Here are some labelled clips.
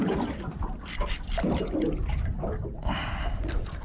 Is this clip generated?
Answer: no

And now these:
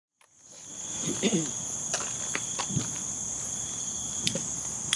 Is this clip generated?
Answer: no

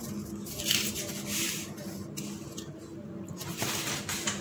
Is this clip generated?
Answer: no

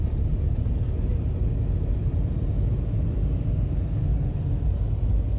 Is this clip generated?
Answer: no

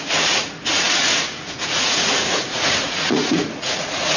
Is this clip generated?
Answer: yes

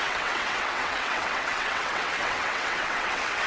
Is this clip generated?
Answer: yes